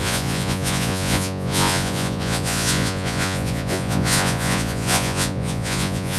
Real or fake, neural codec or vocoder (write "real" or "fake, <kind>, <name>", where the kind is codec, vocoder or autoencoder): fake, vocoder, Vocos